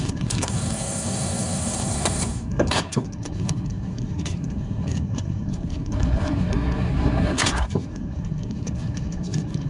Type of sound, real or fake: fake